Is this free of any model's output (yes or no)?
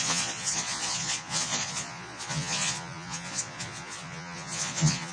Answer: no